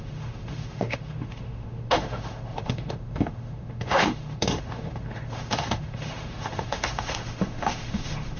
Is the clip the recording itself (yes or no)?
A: no